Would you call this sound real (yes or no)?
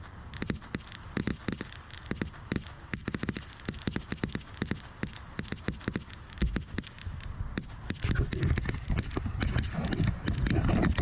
yes